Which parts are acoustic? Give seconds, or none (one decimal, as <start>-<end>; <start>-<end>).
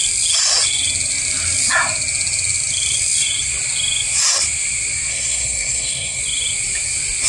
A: 0.0-5.1; 6.2-7.3